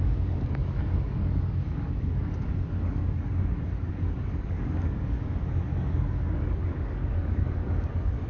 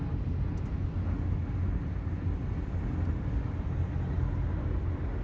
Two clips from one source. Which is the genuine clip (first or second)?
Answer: second